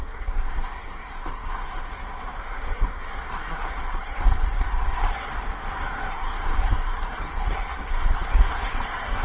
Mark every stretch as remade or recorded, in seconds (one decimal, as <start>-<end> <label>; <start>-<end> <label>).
0.0-1.8 remade; 1.8-2.4 recorded; 2.4-5.3 remade; 5.3-6.1 recorded; 6.1-9.2 remade

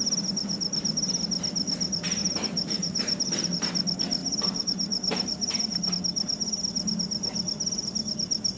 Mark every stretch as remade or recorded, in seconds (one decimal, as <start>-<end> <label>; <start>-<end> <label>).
0.0-2.2 recorded; 2.2-3.6 remade; 3.6-4.2 recorded; 4.2-5.9 remade; 5.9-8.6 recorded

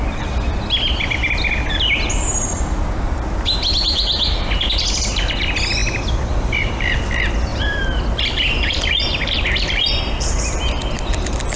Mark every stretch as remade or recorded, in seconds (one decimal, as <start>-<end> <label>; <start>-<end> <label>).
0.0-5.8 recorded; 5.8-7.0 remade; 7.0-7.5 recorded; 7.5-10.0 remade; 10.0-11.6 recorded